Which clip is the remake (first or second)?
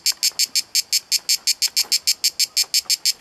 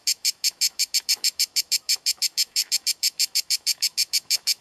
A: second